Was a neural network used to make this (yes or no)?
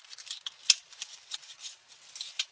no